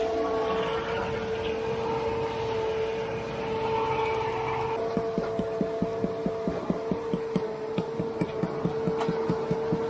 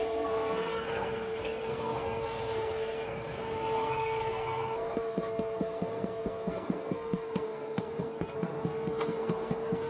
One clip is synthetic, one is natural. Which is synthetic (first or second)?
second